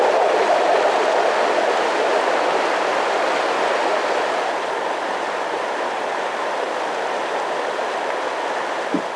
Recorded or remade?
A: recorded